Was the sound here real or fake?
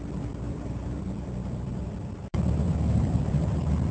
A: fake